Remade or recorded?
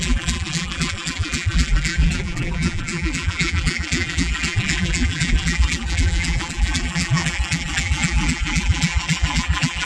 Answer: remade